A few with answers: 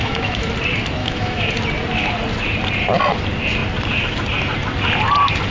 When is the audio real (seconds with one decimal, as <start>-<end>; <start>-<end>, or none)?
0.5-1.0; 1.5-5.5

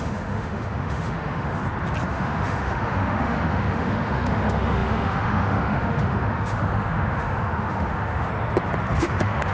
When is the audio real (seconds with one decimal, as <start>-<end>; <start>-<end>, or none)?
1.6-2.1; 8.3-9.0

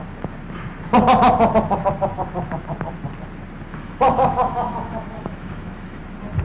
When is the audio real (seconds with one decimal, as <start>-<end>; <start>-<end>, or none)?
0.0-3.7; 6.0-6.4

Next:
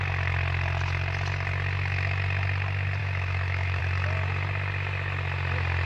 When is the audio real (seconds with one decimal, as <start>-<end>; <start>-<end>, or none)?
0.0-3.0; 3.8-5.9